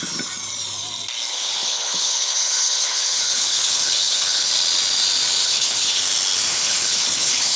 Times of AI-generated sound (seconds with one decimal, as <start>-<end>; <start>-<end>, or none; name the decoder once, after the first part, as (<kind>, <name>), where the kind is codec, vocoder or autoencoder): 1.3-4.5 (codec, HILCodec); 5.4-6.0; 6.5-7.6